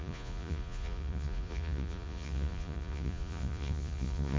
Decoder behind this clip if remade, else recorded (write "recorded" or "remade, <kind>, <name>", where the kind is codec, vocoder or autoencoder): remade, vocoder, Vocos